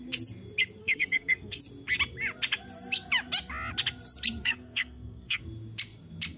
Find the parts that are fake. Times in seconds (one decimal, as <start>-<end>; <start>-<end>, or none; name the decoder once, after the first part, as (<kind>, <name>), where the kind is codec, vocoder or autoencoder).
0.8-1.6 (codec, SNAC); 4.4-5.4